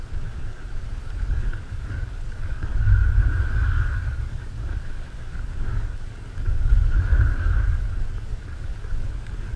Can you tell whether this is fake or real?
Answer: fake